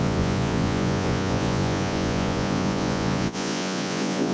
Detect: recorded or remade remade